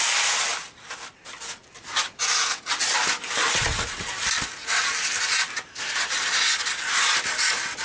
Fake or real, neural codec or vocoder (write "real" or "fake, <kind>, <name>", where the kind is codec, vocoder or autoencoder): real